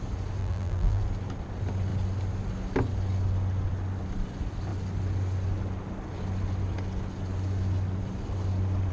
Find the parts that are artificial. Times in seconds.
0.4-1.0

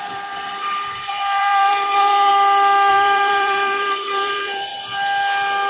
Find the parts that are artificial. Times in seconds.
0.0-2.3; 2.9-4.7

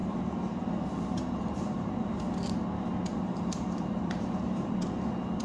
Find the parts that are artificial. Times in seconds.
0.0-2.2; 3.1-4.7

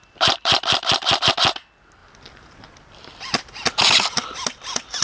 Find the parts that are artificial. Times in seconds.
0.0-1.3; 2.0-4.1

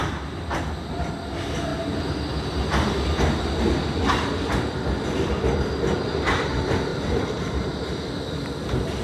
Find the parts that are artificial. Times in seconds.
6.9-8.6